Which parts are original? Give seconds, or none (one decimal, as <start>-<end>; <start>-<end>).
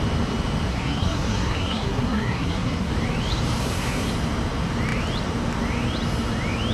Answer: 0.0-0.7; 2.9-3.6; 4.1-6.7